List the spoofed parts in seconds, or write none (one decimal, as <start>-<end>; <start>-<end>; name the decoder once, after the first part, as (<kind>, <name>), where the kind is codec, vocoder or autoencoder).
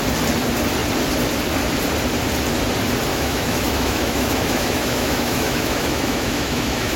3.1-7.0 (autoencoder, DAC-VAE)